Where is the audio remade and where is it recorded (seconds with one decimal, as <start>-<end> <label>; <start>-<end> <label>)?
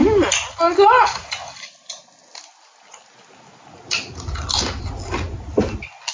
0.0-6.1 recorded